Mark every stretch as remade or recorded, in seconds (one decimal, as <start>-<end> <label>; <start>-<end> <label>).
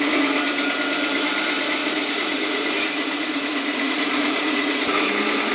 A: 0.0-1.8 recorded; 1.8-5.1 remade; 5.1-5.5 recorded